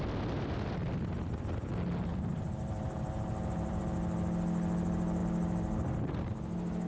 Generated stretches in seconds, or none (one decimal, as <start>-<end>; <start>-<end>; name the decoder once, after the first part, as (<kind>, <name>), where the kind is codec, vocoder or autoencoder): 2.1-3.8 (vocoder, BigVGAN v2)